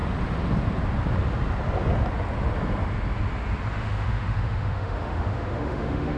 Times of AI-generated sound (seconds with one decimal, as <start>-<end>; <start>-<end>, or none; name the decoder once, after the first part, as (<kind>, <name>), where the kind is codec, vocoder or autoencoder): 3.7-6.2 (autoencoder, DAC-VAE)